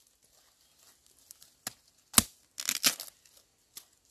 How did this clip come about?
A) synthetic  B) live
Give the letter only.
B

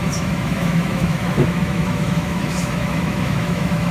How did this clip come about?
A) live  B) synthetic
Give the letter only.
B